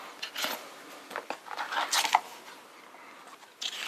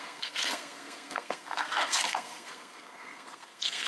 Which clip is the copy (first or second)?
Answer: second